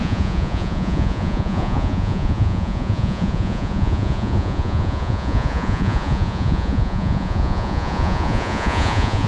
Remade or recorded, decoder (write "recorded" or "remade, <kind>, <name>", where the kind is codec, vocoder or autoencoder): remade, vocoder, Vocos